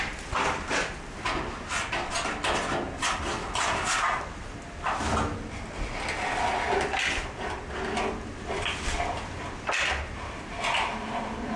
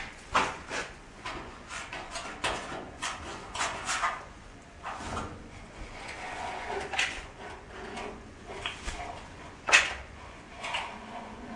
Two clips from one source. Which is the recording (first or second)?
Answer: first